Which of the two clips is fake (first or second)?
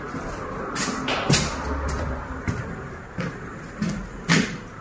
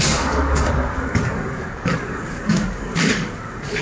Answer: second